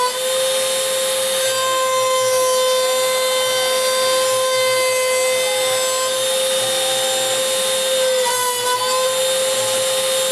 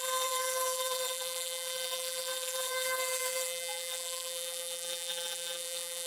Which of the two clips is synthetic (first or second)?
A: second